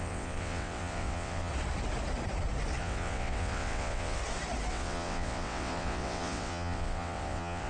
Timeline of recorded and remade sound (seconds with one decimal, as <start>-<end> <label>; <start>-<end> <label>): 0.0-1.5 remade; 1.5-2.8 recorded; 2.8-4.2 remade; 4.2-4.7 recorded; 4.7-7.7 remade